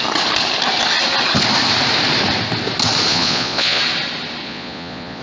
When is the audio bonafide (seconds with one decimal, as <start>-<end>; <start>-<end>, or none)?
0.0-3.1; 3.8-4.4